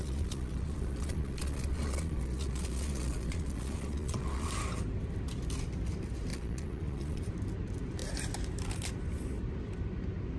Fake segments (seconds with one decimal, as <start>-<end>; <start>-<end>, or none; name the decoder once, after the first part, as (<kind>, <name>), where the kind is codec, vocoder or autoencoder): 0.0-4.5 (vocoder, Vocos); 6.3-7.2